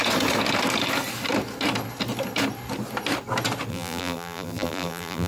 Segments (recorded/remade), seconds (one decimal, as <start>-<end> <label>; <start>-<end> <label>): 0.0-3.7 recorded; 3.7-5.3 remade